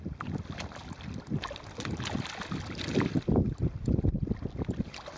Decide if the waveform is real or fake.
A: real